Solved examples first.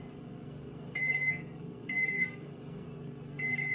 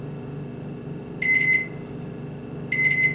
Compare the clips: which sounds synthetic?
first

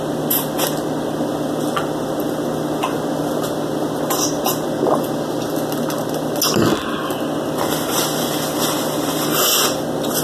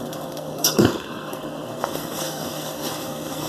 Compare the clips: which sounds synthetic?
second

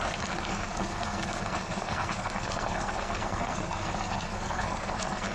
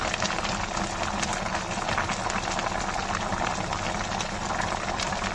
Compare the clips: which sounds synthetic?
first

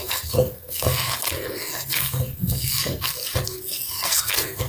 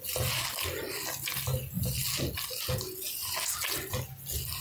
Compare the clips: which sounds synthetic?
first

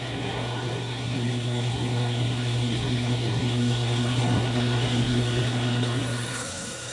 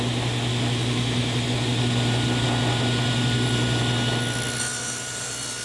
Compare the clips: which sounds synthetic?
first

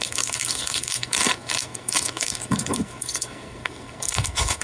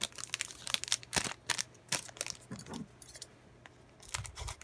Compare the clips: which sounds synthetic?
first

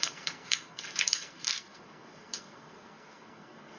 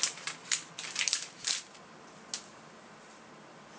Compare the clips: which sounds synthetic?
first